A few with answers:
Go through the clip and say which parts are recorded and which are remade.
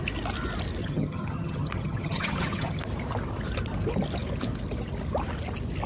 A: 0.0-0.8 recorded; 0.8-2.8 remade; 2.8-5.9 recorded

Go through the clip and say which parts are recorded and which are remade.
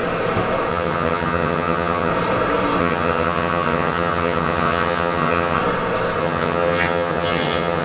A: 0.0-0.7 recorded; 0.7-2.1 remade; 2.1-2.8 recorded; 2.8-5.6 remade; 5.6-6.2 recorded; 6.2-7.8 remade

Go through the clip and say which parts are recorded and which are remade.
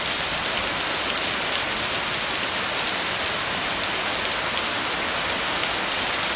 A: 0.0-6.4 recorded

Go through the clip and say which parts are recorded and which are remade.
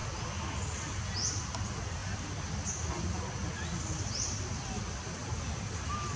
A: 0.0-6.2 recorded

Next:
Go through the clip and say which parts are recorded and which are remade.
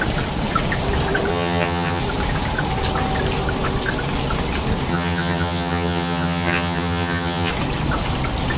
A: 0.0-1.3 recorded; 1.3-2.0 remade; 2.0-4.9 recorded; 4.9-7.5 remade; 7.5-8.6 recorded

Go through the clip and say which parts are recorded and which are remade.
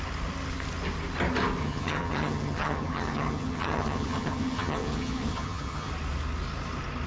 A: 0.0-1.6 recorded; 1.6-5.9 remade; 5.9-7.1 recorded